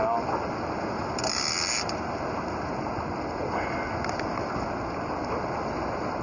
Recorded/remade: recorded